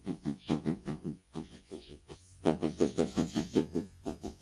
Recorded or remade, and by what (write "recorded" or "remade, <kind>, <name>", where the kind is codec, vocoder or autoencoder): remade, vocoder, Vocos